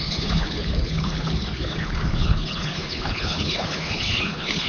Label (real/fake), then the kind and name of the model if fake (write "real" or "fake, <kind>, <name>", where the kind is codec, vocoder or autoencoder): fake, codec, HILCodec